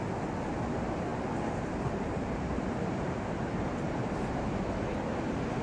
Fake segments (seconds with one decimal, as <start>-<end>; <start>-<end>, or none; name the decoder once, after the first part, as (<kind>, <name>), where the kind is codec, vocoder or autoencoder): 1.1-4.5 (vocoder, BigVGAN v2)